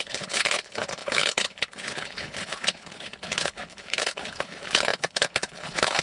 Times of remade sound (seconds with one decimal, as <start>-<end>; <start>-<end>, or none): 0.0-6.0